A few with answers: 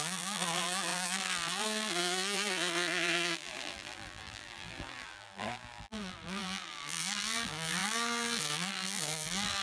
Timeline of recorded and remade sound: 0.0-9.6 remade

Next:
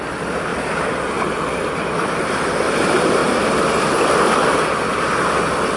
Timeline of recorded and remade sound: 0.0-0.5 remade; 0.5-1.7 recorded; 1.7-3.2 remade; 3.2-5.8 recorded

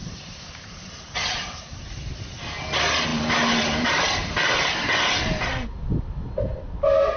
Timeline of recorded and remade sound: 0.0-1.8 remade; 1.8-3.1 recorded; 3.1-4.7 remade; 4.7-7.2 recorded

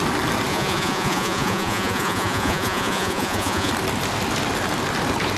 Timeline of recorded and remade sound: 0.0-0.5 recorded; 0.5-3.7 remade; 3.7-5.4 recorded

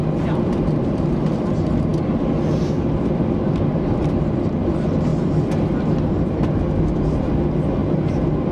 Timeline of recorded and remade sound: 0.0-8.5 recorded